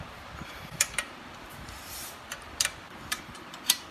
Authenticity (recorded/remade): remade